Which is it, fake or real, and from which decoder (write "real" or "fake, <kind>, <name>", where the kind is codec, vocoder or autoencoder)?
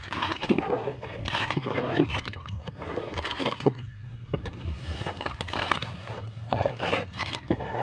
fake, codec, SNAC